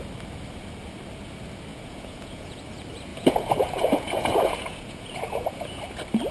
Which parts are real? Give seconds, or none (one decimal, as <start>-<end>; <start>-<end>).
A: 0.0-1.7; 2.6-3.1; 5.8-6.3